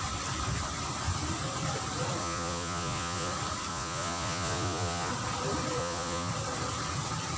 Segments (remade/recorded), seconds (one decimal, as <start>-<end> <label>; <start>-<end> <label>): 0.0-2.2 recorded; 2.2-3.3 remade; 3.3-3.7 recorded; 3.7-5.1 remade; 5.1-5.8 recorded; 5.8-6.3 remade; 6.3-7.4 recorded